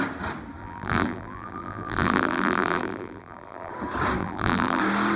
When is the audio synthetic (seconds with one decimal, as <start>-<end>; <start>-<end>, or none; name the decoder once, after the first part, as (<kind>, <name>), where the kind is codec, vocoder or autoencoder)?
0.6-3.7 (vocoder, BigVGAN v2); 4.2-4.8